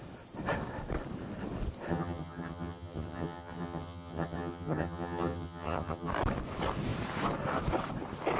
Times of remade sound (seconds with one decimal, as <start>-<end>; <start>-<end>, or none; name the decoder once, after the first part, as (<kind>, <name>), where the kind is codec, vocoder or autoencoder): 1.9-6.1 (vocoder, HiFi-GAN)